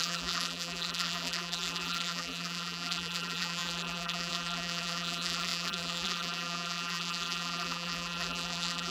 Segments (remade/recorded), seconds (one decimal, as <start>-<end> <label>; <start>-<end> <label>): 0.0-8.9 remade